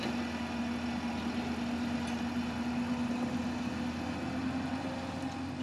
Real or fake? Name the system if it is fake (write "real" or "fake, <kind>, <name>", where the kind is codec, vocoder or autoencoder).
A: real